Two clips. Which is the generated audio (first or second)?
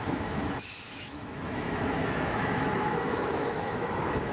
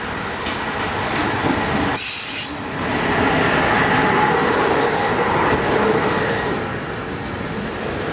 first